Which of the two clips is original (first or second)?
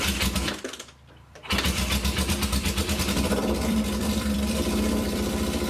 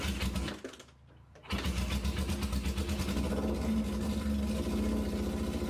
second